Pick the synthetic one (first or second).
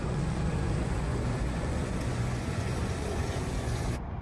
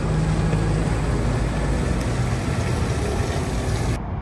first